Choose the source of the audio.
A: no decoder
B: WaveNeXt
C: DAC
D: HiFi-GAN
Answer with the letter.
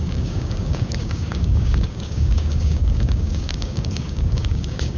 C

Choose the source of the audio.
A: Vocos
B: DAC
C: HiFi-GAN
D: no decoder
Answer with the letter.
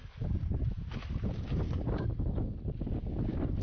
D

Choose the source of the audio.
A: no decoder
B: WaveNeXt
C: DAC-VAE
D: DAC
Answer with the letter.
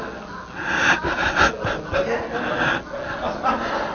A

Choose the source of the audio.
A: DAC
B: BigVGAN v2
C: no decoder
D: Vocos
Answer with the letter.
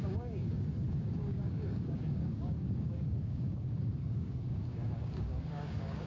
A